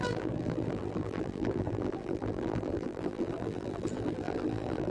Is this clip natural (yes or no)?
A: no